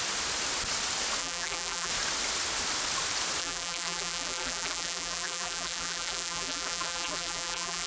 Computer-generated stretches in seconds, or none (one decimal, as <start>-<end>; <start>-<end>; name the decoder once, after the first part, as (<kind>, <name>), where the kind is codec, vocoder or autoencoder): 1.2-1.9 (vocoder, BigVGAN v2); 3.4-7.9